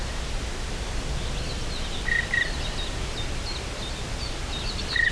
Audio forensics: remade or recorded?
recorded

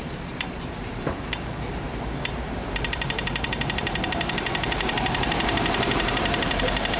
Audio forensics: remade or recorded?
remade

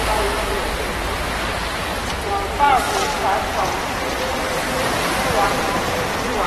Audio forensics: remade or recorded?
remade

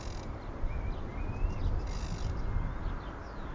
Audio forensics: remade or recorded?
recorded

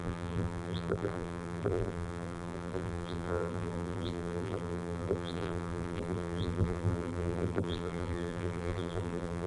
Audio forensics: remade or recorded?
remade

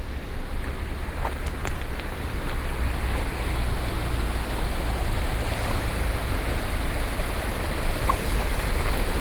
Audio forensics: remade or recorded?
recorded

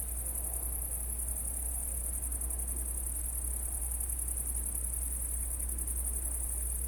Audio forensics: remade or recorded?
recorded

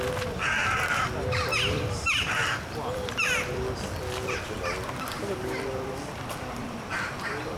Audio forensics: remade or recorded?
remade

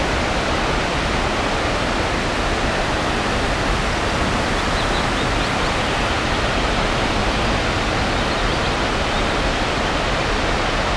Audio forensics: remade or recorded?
recorded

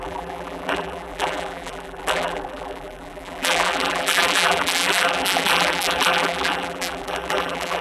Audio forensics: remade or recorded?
remade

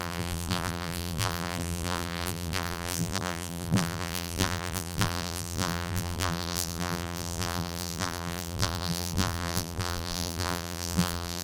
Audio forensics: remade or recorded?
remade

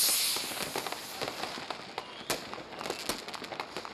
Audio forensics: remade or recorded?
recorded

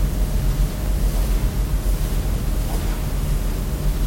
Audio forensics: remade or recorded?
recorded